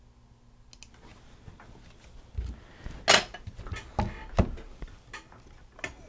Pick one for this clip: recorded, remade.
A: recorded